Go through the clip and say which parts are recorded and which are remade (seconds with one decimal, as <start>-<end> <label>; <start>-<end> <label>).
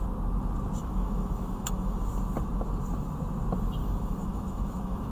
0.0-0.8 recorded; 0.8-2.1 remade; 2.1-3.8 recorded; 3.8-5.1 remade